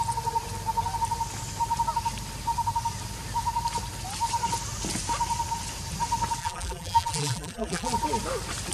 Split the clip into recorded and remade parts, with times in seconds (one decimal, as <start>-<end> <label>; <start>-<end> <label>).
0.0-6.4 recorded; 6.4-7.9 remade; 7.9-8.7 recorded